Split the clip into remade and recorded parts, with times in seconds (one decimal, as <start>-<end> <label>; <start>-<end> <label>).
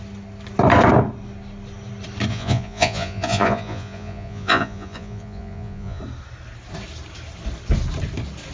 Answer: 0.0-2.3 recorded; 2.3-6.0 remade; 6.0-8.5 recorded